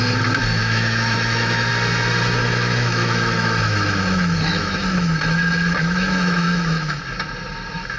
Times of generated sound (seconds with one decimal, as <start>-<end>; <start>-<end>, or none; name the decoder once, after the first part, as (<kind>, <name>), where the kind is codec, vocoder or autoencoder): 0.6-1.7 (autoencoder, DAC-VAE); 2.4-7.0

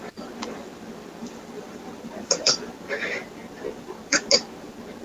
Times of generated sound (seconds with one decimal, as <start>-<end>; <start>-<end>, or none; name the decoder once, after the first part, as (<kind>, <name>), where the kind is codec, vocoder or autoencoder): 1.2-4.2 (vocoder, BigVGAN v2)